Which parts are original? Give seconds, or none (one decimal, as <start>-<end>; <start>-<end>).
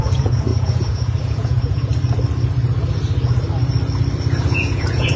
1.9-4.4